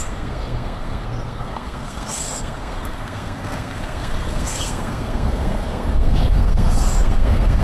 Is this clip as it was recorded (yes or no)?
no